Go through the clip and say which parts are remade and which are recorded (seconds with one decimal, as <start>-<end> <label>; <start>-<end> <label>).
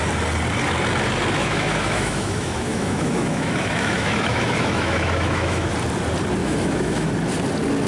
0.0-1.4 recorded; 1.4-5.7 remade; 5.7-6.4 recorded; 6.4-7.1 remade; 7.1-7.9 recorded